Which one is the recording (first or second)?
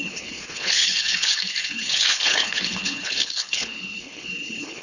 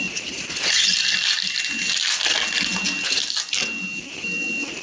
second